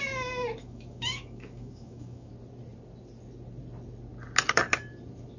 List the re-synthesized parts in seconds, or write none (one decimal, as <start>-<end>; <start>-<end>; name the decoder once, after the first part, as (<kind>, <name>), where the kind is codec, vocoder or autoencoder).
0.6-2.3 (autoencoder, DAC-VAE)